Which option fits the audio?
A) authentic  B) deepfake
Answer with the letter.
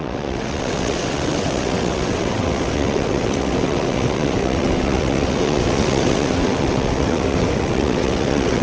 B